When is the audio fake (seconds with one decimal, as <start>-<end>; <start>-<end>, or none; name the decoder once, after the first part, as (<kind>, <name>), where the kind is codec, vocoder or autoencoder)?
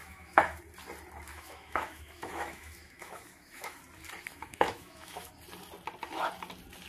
0.0-0.6 (autoencoder, DAC-VAE); 1.3-3.8; 4.3-5.3